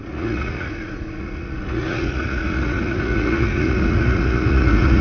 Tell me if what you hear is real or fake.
fake